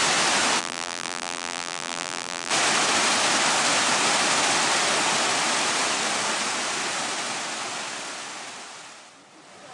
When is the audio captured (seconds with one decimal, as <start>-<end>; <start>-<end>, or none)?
0.0-0.6; 2.5-9.7